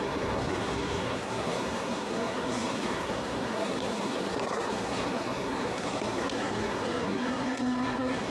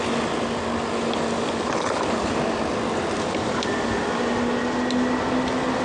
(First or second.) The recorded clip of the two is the second